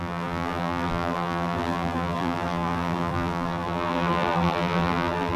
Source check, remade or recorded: remade